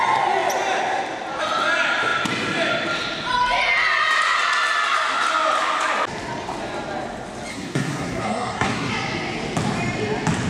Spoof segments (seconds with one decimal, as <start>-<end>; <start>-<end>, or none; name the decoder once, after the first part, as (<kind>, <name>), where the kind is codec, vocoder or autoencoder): 7.5-8.9 (codec, SNAC)